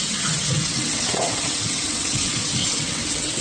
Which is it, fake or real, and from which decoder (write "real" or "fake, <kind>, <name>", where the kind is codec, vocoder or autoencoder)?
fake, vocoder, WaveNeXt